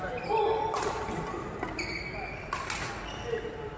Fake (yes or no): no